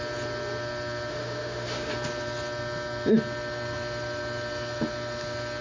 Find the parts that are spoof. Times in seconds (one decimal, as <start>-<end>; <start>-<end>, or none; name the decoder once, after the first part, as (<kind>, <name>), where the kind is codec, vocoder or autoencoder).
1.1-1.9 (autoencoder, DAC-VAE)